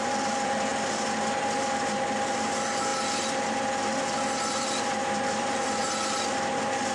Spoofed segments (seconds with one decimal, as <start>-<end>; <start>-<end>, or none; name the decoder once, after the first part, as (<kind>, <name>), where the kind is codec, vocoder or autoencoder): 0.0-0.7 (vocoder, BigVGAN v2); 1.4-5.8; 6.3-6.9